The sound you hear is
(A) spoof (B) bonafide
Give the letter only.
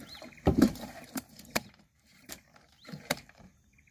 A